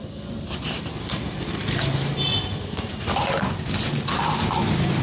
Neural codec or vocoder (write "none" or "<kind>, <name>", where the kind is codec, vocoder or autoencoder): none